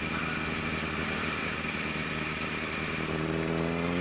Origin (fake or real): real